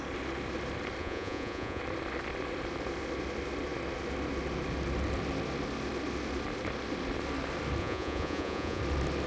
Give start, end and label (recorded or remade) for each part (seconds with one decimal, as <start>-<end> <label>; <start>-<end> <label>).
0.0-1.0 recorded; 1.0-1.8 remade; 1.8-7.8 recorded; 7.8-8.8 remade; 8.8-9.3 recorded